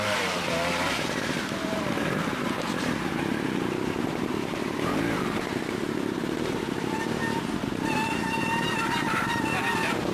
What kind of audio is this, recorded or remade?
remade